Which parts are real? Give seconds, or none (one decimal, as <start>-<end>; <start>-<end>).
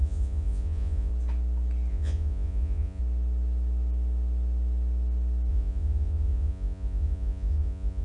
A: 1.1-1.9; 3.0-5.5